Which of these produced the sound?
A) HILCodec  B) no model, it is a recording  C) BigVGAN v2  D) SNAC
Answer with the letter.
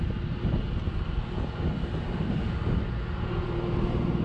B